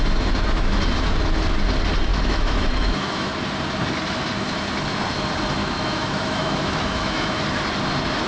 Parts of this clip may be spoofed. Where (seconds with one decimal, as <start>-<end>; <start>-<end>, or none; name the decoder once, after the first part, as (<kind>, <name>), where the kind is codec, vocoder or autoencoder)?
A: 2.1-3.3 (autoencoder, DAC-VAE); 5.6-7.4